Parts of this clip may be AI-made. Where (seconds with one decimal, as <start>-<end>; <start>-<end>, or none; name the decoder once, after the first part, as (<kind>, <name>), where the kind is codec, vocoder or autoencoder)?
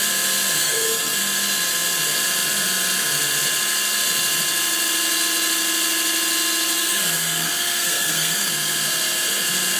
0.6-1.2 (codec, SNAC); 6.8-8.5